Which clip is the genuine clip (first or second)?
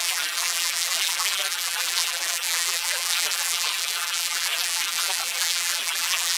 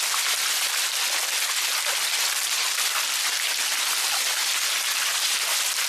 second